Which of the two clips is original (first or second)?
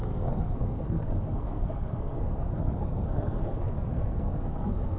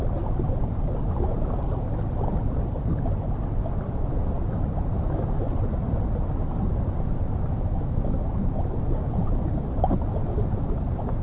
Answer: second